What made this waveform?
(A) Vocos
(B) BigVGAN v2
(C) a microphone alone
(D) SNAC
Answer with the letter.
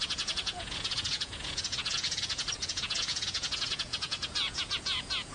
A